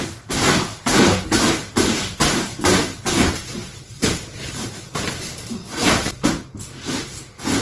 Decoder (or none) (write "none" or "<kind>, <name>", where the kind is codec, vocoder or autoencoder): vocoder, BigVGAN v2